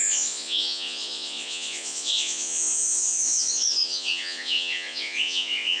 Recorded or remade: remade